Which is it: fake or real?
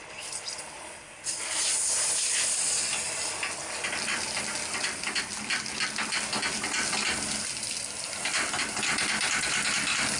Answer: real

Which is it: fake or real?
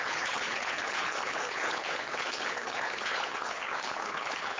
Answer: fake